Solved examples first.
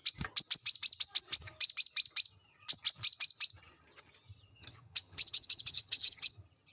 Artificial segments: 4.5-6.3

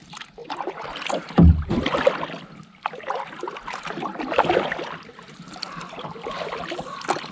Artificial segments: none

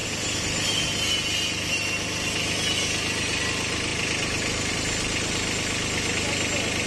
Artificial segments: none

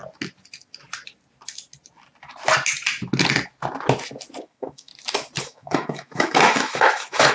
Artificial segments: 4.4-4.9; 5.4-7.3

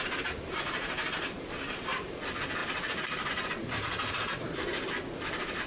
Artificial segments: none